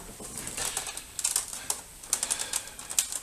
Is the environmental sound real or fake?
real